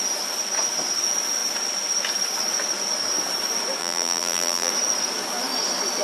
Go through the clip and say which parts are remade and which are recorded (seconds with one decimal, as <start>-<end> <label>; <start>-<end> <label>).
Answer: 0.0-3.8 recorded; 3.8-4.7 remade; 4.7-6.0 recorded